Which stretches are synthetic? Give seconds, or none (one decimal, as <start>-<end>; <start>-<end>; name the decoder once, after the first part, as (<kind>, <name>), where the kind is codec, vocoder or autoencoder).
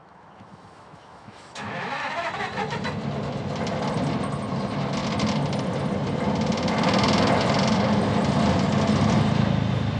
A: 0.0-2.1 (autoencoder, DAC-VAE)